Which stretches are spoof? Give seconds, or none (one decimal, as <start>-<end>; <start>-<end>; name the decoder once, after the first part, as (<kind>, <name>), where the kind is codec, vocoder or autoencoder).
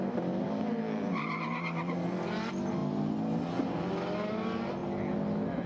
none